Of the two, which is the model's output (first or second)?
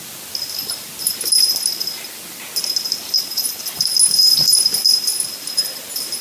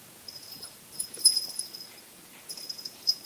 second